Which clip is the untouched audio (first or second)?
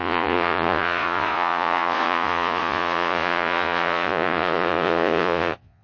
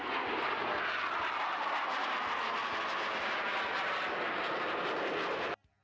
second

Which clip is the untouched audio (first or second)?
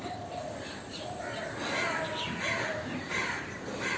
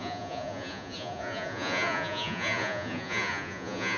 first